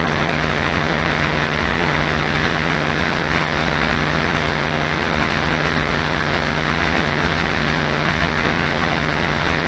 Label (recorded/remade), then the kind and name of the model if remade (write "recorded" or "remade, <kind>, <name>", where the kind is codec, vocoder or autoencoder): remade, vocoder, HiFi-GAN